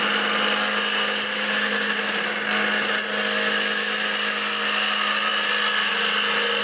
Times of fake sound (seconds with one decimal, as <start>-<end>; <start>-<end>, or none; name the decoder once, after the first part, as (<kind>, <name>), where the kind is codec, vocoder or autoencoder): none